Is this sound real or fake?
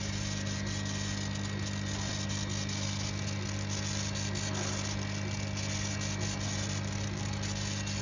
real